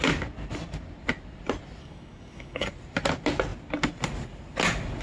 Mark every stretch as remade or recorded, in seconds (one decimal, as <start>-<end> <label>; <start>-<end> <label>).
0.0-1.8 recorded; 1.8-2.7 remade; 2.7-5.0 recorded